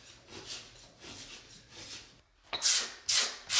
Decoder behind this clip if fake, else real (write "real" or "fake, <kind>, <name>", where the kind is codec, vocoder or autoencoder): real